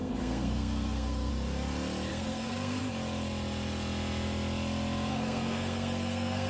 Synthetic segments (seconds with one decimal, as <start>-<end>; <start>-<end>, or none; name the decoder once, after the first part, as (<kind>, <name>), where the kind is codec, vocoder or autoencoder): 0.0-1.3 (codec, SNAC); 2.1-2.8; 5.1-6.5